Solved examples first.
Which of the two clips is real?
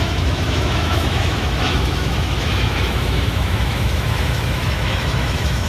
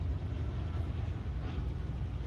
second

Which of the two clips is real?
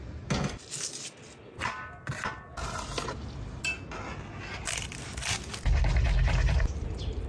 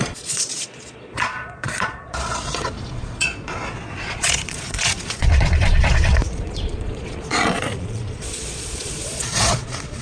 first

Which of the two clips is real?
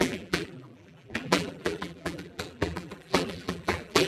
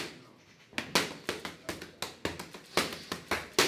second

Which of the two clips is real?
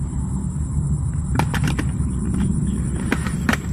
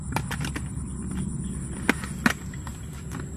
second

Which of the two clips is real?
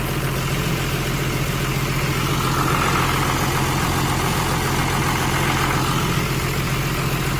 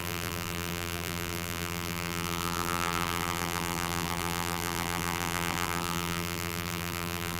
first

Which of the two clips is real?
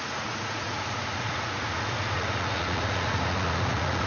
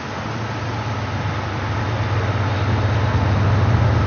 second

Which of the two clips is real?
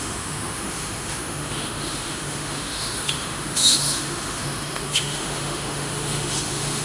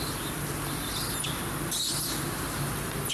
second